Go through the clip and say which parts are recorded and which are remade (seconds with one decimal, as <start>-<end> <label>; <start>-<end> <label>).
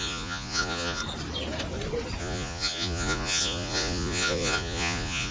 0.0-1.0 remade; 1.0-2.2 recorded; 2.2-5.3 remade